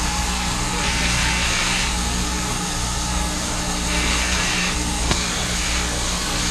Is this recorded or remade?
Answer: remade